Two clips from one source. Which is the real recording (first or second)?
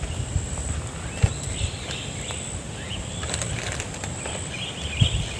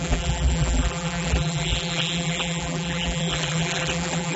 first